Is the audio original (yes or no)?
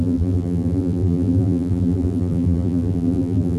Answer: no